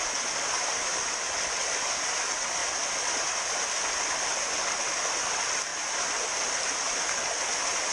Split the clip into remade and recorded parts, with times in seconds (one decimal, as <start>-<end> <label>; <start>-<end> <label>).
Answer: 0.0-2.6 recorded; 2.6-3.8 remade; 3.8-5.7 recorded; 5.7-6.3 remade; 6.3-7.9 recorded